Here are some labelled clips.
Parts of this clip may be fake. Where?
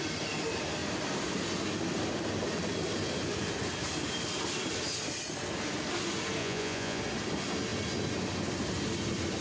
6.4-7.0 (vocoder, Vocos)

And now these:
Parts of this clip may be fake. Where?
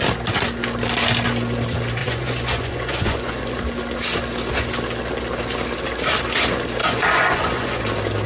2.0-3.6 (vocoder, Vocos); 6.8-7.8